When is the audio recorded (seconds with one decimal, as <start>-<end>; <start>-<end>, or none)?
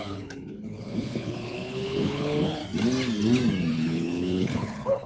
2.6-3.7